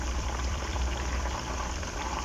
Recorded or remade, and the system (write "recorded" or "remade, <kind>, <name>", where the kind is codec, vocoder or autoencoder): remade, vocoder, BigVGAN v2